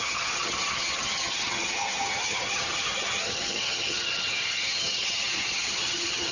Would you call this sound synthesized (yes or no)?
yes